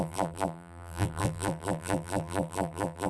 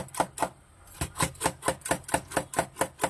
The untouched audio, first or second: second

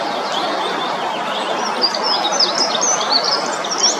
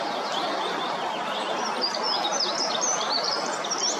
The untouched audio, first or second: first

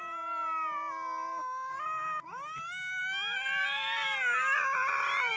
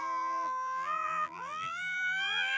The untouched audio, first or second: first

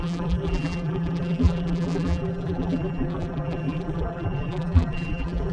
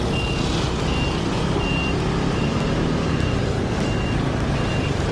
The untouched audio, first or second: second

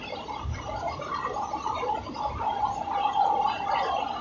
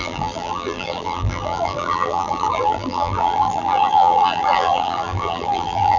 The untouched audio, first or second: first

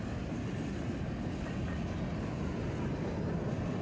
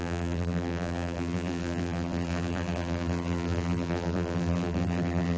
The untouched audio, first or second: first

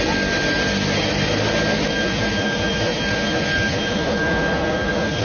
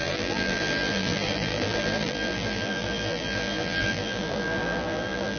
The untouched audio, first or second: first